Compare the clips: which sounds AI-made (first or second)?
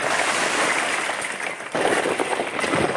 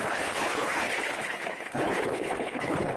second